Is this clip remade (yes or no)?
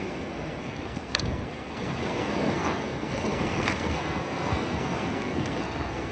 yes